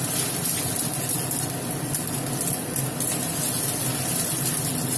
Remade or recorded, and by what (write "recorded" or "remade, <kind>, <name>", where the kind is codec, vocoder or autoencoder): recorded